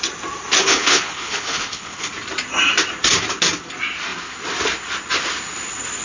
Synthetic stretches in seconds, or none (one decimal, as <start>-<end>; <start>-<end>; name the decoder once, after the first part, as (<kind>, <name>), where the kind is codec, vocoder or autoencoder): 0.6-2.1 (codec, HILCodec)